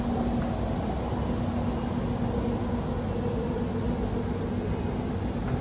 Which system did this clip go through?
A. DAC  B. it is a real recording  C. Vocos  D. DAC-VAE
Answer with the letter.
B